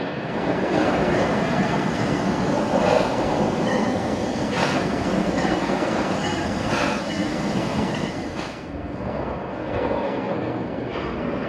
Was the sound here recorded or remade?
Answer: remade